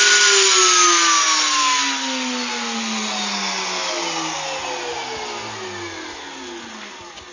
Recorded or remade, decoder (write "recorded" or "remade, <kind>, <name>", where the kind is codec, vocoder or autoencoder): recorded